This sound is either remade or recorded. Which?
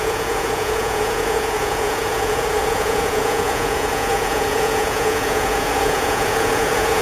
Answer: remade